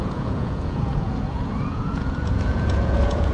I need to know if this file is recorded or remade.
remade